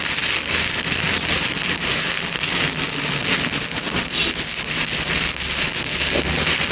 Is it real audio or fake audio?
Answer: real